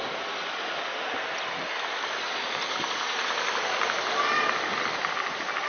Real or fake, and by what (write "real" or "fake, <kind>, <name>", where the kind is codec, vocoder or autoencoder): real